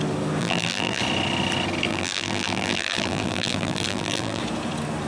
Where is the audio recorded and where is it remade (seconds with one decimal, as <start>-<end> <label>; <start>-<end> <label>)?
0.0-0.4 recorded; 0.4-1.0 remade; 1.0-1.9 recorded; 1.9-4.4 remade; 4.4-5.1 recorded